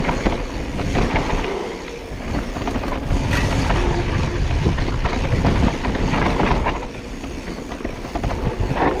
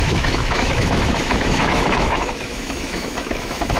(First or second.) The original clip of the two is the first